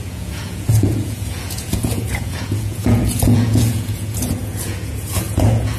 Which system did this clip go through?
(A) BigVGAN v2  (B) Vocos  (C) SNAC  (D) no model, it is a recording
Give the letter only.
B